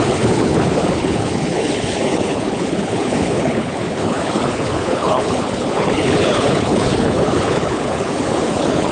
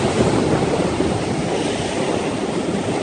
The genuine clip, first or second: second